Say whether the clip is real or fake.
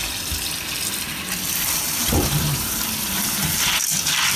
real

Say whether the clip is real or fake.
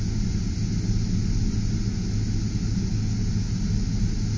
real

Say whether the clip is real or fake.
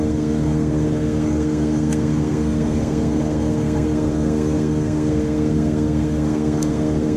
fake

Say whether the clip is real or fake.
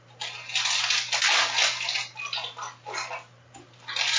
real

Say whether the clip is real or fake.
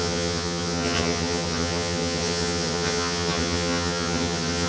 fake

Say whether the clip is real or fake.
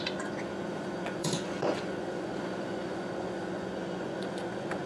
fake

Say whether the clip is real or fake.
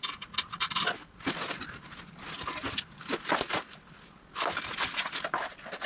real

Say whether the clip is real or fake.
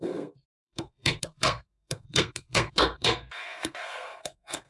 fake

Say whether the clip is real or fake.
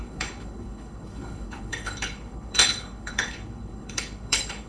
fake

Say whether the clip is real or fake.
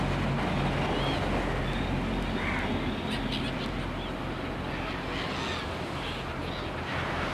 real